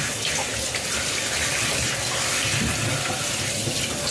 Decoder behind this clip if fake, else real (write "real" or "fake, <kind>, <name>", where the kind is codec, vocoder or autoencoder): real